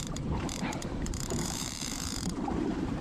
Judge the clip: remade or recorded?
remade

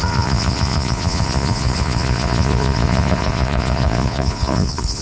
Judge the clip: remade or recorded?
remade